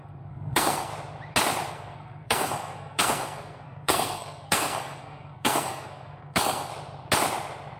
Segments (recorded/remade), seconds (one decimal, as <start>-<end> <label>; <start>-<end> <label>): 0.0-0.9 remade; 0.9-1.7 recorded; 1.7-6.7 remade; 6.7-7.8 recorded